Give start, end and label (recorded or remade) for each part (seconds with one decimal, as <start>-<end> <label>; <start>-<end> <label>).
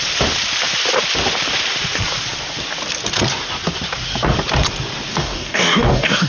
0.0-5.1 recorded; 5.1-6.3 remade